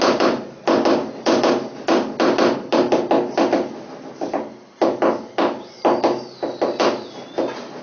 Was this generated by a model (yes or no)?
no